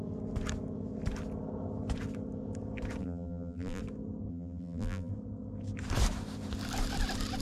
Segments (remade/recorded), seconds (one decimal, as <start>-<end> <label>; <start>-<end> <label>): 0.0-3.0 recorded; 3.0-3.8 remade; 3.8-4.3 recorded; 4.3-5.1 remade; 5.1-7.4 recorded